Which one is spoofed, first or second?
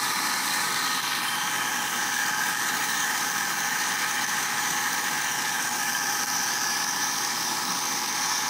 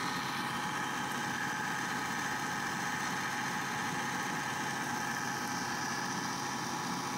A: first